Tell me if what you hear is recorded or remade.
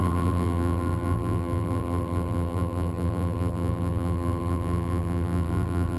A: remade